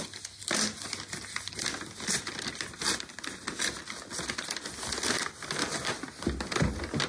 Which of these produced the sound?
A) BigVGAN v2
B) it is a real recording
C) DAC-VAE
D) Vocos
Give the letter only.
B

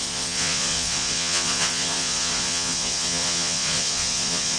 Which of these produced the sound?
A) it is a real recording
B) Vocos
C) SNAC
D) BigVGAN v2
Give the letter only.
B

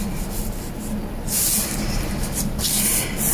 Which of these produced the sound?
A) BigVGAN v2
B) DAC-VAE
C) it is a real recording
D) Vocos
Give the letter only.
A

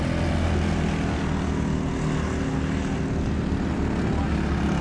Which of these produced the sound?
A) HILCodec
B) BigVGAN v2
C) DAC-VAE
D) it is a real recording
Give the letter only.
D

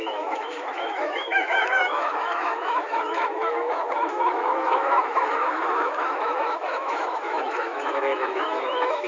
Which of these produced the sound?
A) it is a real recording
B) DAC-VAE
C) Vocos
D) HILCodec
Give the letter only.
B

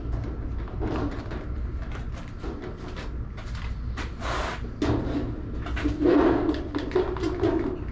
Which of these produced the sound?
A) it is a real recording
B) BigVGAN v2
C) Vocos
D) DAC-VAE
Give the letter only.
A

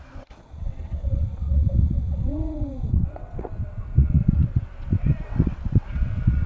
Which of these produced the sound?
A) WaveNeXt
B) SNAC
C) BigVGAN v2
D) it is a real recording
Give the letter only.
A